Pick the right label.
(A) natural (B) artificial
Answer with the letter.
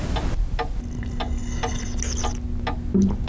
A